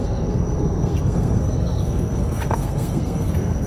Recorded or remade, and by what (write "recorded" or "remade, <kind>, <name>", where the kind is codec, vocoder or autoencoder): remade, codec, SNAC